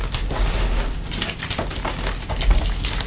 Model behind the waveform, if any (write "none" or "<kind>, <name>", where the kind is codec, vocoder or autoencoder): none